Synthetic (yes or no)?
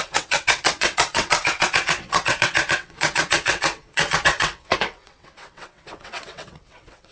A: yes